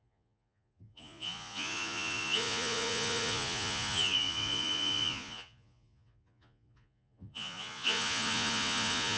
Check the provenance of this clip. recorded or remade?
remade